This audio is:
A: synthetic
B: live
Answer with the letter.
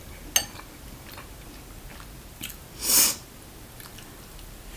B